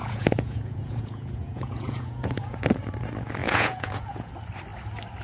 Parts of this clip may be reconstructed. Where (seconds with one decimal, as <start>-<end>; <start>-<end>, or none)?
0.0-2.7; 3.4-4.3